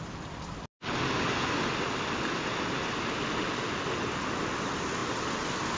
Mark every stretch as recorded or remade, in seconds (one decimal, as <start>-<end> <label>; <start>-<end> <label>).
0.0-5.8 recorded